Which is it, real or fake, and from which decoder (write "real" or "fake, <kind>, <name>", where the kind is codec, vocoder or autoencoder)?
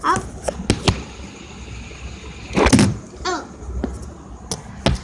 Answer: real